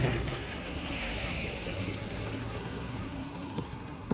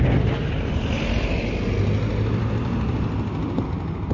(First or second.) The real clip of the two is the second